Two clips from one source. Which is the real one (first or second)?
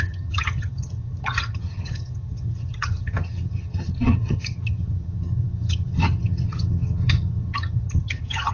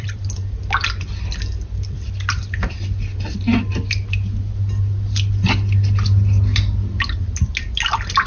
second